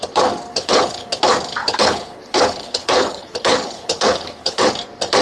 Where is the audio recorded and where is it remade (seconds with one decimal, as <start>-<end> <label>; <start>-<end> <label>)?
0.0-0.5 recorded; 0.5-1.2 remade; 1.2-1.6 recorded; 1.6-4.7 remade; 4.7-5.2 recorded

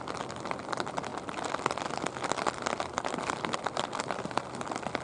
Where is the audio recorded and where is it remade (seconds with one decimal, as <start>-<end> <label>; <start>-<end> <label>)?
0.0-5.0 recorded

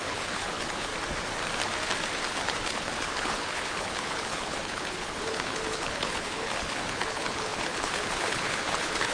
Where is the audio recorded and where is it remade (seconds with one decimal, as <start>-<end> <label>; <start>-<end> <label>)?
0.0-0.9 remade; 0.9-2.3 recorded; 2.3-9.1 remade

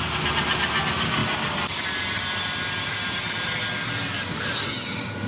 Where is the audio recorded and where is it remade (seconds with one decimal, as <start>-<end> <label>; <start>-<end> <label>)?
0.0-5.3 recorded